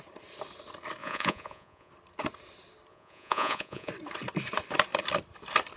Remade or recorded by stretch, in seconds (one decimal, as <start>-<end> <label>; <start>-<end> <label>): 0.0-1.0 recorded; 1.0-1.9 remade; 1.9-2.9 recorded; 2.9-3.9 remade; 3.9-5.8 recorded